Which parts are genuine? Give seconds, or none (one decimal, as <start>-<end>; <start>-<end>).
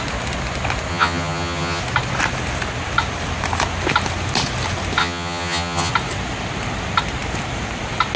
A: 0.0-0.9; 1.8-5.0; 5.9-8.2